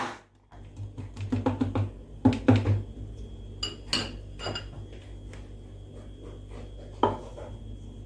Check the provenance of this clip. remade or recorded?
recorded